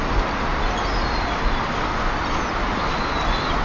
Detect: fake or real real